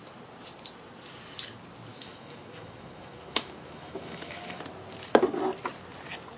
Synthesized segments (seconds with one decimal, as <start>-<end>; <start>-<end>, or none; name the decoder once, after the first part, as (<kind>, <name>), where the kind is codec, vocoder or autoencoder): 1.9-4.6 (autoencoder, DAC-VAE)

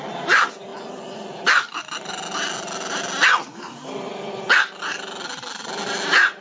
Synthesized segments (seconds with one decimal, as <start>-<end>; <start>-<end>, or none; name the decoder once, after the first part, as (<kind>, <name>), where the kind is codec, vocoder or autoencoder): none

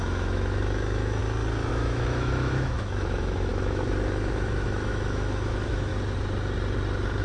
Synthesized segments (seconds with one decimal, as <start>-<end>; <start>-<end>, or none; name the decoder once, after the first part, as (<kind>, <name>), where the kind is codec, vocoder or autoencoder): 0.0-1.2 (autoencoder, DAC-VAE); 1.7-5.9

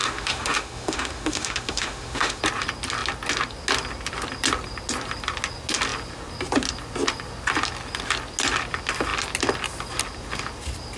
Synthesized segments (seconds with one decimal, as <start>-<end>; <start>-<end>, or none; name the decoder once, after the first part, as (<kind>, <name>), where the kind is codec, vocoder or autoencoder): 0.0-2.4 (autoencoder, DAC-VAE)

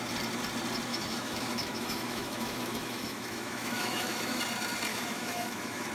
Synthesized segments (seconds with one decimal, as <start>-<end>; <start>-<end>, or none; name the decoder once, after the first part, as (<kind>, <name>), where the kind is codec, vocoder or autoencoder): 0.9-4.4 (autoencoder, DAC-VAE); 4.9-5.9

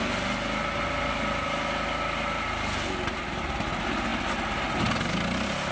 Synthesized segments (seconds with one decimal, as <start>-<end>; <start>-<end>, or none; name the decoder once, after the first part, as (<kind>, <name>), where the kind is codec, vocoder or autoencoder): none